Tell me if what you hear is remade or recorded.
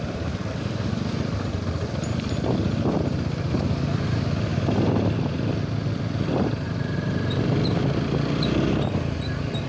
recorded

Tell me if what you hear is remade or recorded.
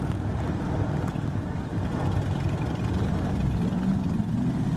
remade